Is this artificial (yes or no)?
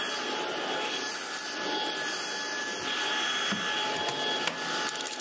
no